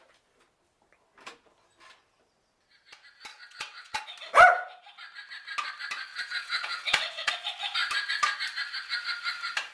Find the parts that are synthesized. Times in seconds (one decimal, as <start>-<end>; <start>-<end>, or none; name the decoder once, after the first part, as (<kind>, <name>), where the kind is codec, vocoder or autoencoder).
3.3-4.0 (vocoder, WaveNeXt); 6.1-7.3